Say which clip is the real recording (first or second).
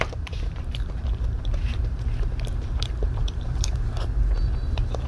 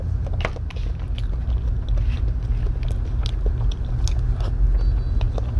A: second